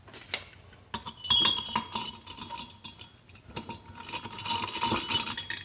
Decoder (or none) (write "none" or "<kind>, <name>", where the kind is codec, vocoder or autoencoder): none